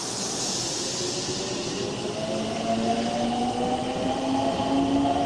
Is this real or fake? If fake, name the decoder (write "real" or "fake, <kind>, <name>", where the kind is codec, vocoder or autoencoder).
real